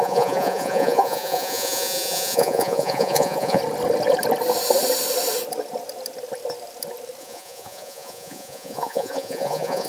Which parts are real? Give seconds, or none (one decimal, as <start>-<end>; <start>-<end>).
3.6-7.2